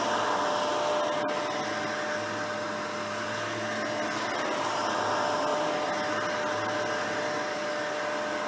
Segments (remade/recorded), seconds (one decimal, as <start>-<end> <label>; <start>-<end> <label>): 0.0-8.5 recorded